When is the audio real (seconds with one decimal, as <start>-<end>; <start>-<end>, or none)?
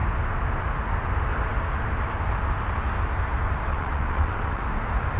0.0-3.7; 4.6-5.2